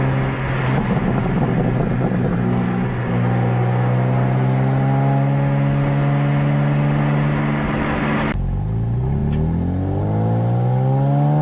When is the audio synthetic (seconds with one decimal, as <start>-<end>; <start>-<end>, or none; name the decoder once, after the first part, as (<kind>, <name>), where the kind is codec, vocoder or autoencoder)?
none